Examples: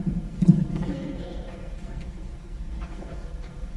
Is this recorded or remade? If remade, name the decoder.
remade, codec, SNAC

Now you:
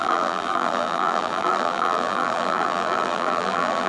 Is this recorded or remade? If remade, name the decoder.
remade, vocoder, BigVGAN v2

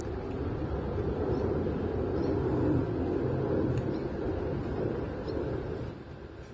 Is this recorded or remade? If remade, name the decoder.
recorded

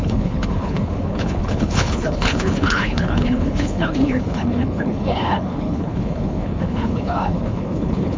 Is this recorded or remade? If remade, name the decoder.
remade, codec, HILCodec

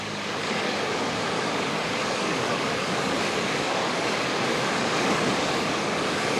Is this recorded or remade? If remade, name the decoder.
remade, codec, DAC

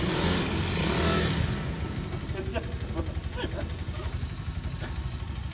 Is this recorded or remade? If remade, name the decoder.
recorded